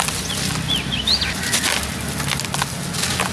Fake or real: real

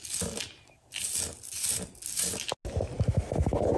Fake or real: real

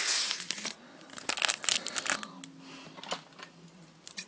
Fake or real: real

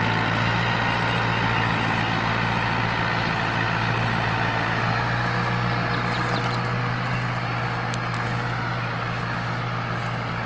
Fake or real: real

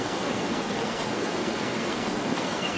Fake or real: fake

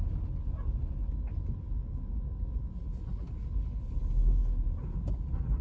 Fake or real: real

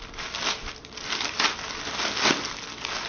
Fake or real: real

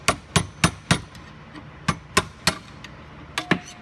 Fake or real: real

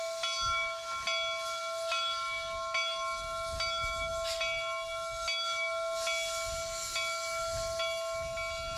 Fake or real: real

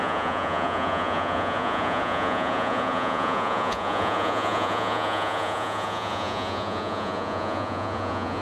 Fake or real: fake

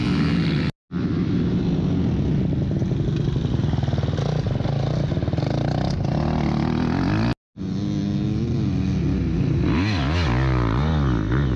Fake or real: real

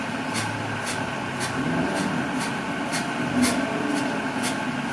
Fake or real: real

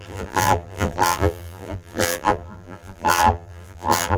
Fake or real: fake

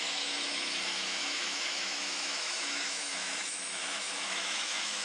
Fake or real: fake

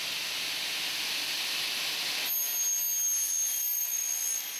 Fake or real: real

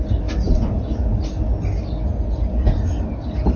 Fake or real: real